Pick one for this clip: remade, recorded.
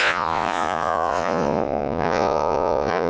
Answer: remade